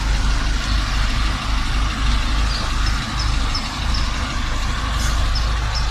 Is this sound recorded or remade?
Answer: recorded